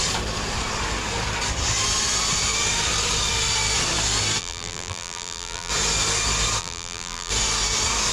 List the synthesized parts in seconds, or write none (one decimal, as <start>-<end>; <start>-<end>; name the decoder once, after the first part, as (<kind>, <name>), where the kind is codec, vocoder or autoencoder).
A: 4.4-5.7 (vocoder, BigVGAN v2); 6.6-7.3